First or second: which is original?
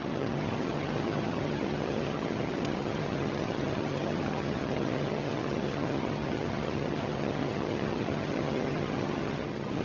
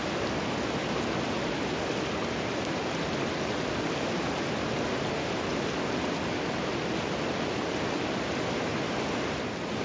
second